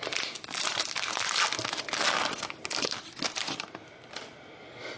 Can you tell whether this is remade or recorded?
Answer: recorded